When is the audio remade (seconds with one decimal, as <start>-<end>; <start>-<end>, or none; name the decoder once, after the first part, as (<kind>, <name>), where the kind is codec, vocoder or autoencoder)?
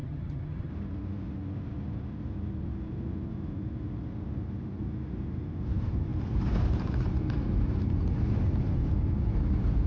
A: 0.0-0.7 (vocoder, HiFi-GAN)